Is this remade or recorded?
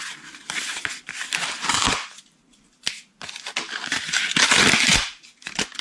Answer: recorded